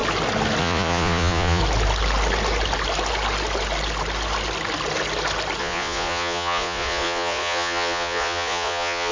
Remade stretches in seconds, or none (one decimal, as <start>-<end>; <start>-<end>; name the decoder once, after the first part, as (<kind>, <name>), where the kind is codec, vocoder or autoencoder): 0.6-1.6 (vocoder, Vocos); 5.6-9.1